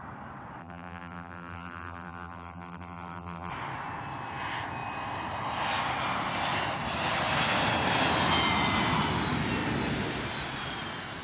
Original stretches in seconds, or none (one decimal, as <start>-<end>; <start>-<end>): 0.0-0.6; 3.5-11.2